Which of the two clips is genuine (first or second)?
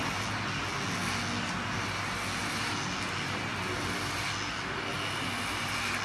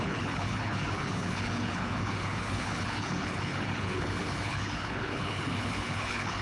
first